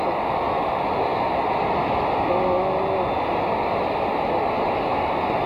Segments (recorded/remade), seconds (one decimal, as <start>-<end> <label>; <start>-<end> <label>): 0.0-5.5 recorded